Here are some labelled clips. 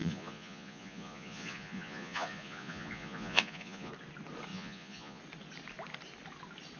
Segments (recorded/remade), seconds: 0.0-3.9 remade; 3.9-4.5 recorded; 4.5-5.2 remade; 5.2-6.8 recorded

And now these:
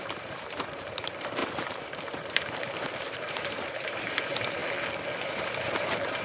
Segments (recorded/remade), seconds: 0.0-4.6 remade; 4.6-5.2 recorded; 5.2-6.2 remade

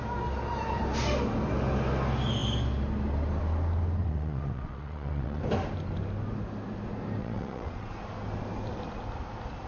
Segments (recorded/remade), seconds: 0.0-4.0 recorded; 4.0-5.4 remade; 5.4-7.2 recorded; 7.2-7.9 remade; 7.9-9.7 recorded

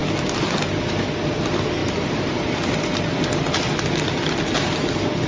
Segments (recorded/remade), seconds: 0.0-1.8 recorded; 1.8-3.5 remade; 3.5-5.3 recorded

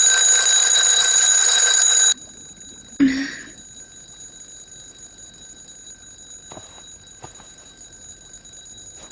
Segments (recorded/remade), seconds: 0.0-0.6 recorded; 0.6-2.0 remade; 2.0-9.1 recorded

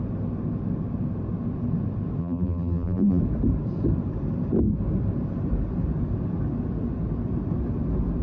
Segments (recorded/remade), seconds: 0.0-2.2 recorded; 2.2-3.2 remade; 3.2-8.2 recorded

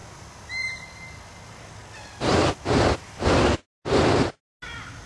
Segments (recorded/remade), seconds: 0.0-5.1 recorded